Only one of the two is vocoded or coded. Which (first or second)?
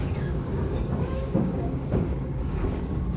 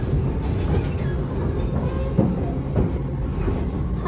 first